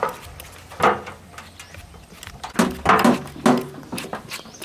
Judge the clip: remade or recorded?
recorded